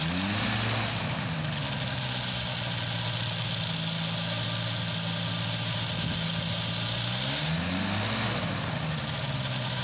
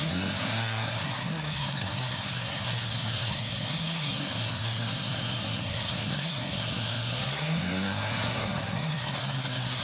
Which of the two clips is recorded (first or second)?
first